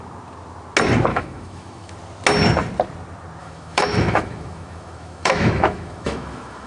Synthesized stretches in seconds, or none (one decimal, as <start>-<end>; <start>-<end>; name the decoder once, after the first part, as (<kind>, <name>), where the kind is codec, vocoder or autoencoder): 1.1-1.9 (autoencoder, DAC-VAE); 3.4-6.7